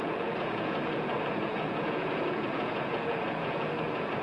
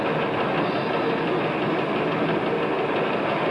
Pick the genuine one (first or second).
second